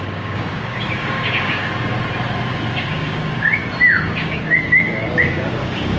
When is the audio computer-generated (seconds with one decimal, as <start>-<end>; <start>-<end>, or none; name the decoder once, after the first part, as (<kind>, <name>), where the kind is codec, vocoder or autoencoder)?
0.0-1.6 (codec, DAC); 2.8-3.5; 4.0-6.0